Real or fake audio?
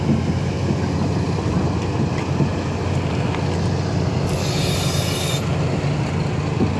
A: real